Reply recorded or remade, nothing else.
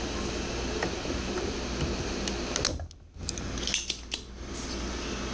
recorded